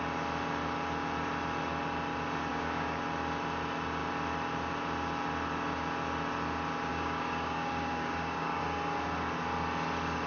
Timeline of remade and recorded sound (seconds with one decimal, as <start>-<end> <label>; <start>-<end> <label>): 0.0-2.5 recorded; 2.5-3.0 remade; 3.0-6.9 recorded; 6.9-8.6 remade; 8.6-10.3 recorded